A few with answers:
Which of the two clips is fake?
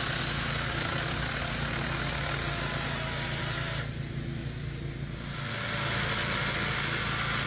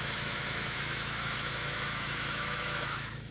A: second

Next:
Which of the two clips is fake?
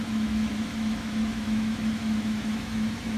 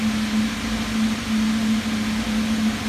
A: first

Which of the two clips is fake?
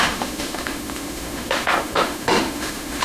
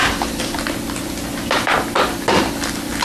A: first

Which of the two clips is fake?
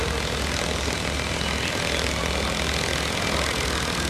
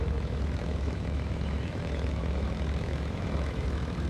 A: second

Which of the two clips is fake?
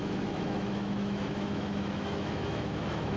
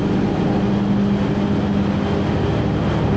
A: first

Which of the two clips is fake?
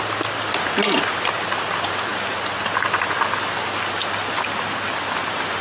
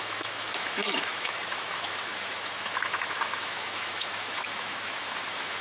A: second